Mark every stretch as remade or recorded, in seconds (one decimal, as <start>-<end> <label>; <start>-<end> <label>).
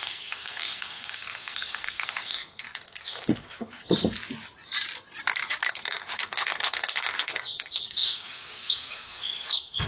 0.0-3.8 remade; 3.8-5.7 recorded; 5.7-9.9 remade